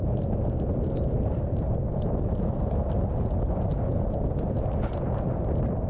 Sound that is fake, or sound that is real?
real